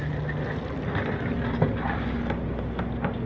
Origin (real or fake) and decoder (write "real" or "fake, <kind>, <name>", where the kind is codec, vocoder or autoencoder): real